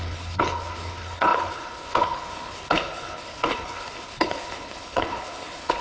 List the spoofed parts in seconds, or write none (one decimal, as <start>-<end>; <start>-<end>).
0.0-5.8